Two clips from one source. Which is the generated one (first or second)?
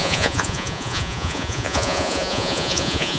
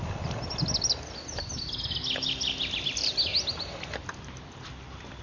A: first